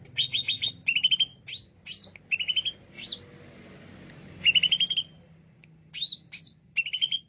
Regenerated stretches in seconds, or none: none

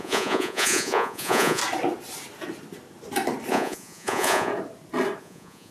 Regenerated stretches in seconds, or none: 0.0-1.6 (vocoder, Vocos); 3.5-4.5; 5.2-5.7

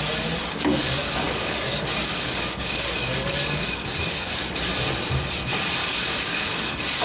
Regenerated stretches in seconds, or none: 0.4-4.6 (codec, DAC); 5.8-7.0